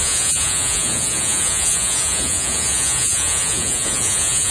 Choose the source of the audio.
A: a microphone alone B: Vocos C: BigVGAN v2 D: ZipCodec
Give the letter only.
B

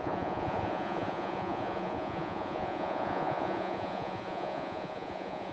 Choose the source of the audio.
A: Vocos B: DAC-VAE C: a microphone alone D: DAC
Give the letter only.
A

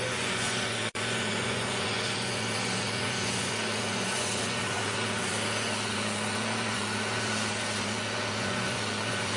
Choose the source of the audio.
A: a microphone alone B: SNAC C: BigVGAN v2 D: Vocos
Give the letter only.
D